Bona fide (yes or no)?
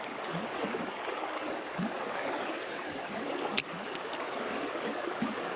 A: no